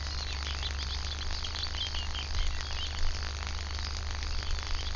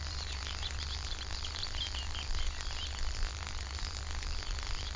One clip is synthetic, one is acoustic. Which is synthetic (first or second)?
second